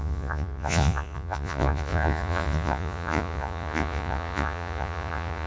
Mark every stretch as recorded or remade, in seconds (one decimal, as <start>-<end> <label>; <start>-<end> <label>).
0.0-5.5 remade